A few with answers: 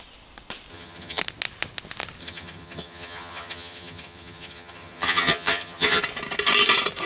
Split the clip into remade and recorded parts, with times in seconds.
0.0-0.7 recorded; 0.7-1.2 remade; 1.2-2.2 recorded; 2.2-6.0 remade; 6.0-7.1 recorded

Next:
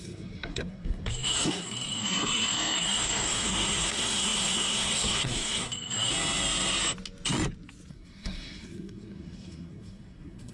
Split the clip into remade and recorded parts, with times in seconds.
0.0-6.1 remade; 6.1-7.9 recorded; 7.9-10.5 remade